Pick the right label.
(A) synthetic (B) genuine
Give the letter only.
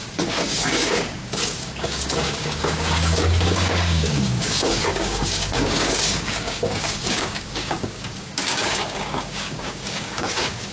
A